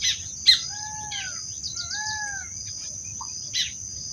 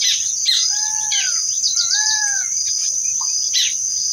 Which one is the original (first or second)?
first